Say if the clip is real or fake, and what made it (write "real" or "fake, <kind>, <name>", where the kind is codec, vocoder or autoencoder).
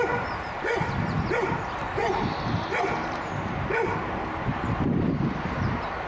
fake, vocoder, BigVGAN v2